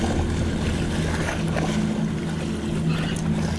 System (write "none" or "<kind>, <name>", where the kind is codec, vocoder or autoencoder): none